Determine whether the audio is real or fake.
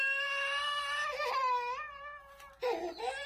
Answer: real